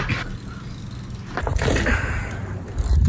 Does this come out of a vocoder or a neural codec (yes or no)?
no